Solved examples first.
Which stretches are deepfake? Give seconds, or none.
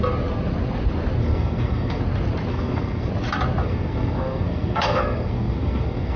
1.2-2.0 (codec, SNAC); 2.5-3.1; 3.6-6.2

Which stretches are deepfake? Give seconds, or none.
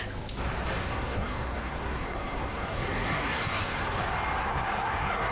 0.8-4.0 (codec, SNAC); 4.4-5.3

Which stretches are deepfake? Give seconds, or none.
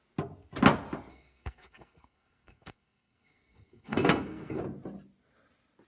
1.1-4.6 (codec, SNAC)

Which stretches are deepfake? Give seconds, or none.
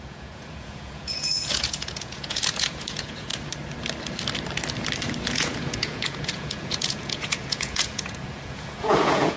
0.0-3.3 (vocoder, Vocos); 5.2-9.4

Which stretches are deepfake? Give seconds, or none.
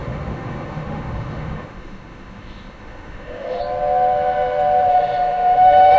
0.0-3.6 (autoencoder, DAC-VAE); 4.9-6.0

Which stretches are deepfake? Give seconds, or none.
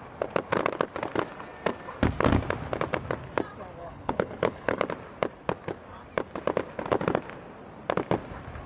3.8-4.8 (codec, HILCodec)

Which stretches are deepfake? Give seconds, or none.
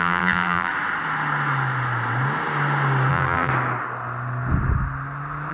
0.0-0.7 (vocoder, BigVGAN v2); 3.1-3.5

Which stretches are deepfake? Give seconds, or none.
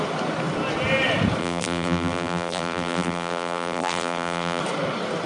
1.4-4.6 (vocoder, BigVGAN v2)